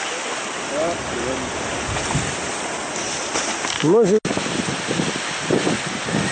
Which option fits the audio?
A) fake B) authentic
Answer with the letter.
B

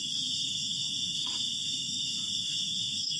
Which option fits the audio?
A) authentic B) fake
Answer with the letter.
B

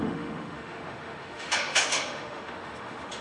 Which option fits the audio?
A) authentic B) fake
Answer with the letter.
B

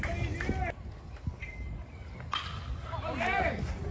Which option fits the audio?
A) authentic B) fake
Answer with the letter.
A